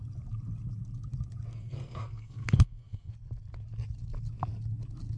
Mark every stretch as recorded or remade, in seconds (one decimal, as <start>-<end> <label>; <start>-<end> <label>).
0.0-1.5 recorded; 1.5-3.1 remade; 3.1-5.2 recorded

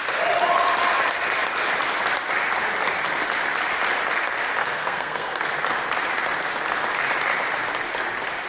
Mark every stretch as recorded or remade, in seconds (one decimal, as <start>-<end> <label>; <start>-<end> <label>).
0.0-4.6 recorded; 4.6-5.5 remade; 5.5-8.5 recorded